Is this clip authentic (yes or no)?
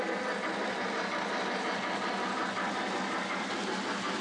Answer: yes